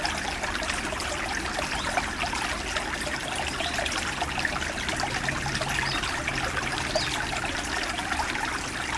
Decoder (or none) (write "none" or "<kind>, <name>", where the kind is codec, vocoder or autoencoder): none